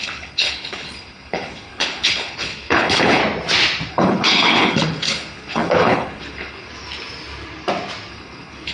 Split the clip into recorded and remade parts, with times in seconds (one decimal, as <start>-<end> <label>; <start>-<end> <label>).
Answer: 0.0-3.2 remade; 3.2-3.9 recorded; 3.9-6.7 remade; 6.7-8.1 recorded; 8.1-8.7 remade

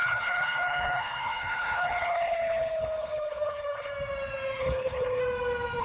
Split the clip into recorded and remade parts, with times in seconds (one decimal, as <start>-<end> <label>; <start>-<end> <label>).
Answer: 0.0-3.9 remade; 3.9-4.6 recorded; 4.6-5.2 remade; 5.2-5.8 recorded

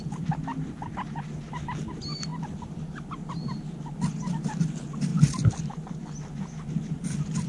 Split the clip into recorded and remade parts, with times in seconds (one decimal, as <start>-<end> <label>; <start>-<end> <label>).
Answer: 0.0-7.5 recorded